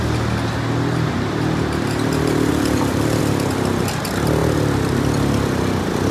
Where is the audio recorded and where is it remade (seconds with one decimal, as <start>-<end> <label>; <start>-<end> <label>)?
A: 0.0-2.5 recorded; 2.5-3.2 remade; 3.2-4.4 recorded; 4.4-6.1 remade